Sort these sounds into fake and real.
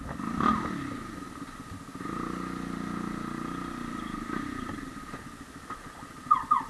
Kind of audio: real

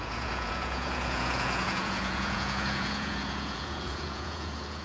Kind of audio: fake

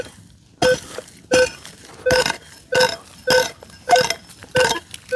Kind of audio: real